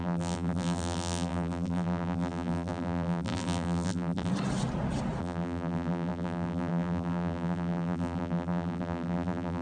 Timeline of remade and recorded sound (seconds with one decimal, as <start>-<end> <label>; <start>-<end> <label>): 0.0-4.3 remade; 4.3-5.2 recorded; 5.2-9.6 remade